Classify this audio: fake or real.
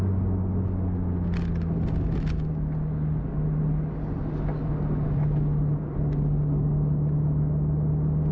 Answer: real